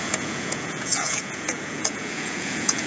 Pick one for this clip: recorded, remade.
remade